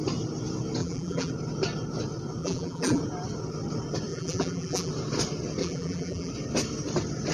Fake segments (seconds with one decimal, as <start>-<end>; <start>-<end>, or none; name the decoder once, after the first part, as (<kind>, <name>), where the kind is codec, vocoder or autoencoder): 0.8-1.3 (vocoder, BigVGAN v2); 2.4-3.0; 4.1-4.9; 5.6-6.3